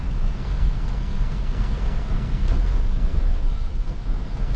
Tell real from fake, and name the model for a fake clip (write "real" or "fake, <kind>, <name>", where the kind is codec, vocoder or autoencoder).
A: fake, codec, SNAC